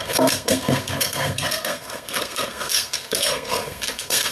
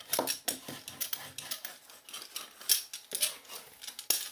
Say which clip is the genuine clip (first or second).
second